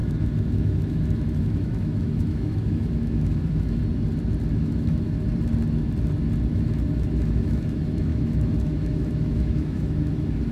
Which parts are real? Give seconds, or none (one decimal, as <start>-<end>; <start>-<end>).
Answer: 3.8-4.5; 5.3-6.5